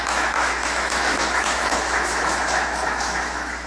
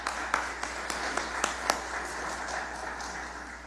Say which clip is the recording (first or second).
second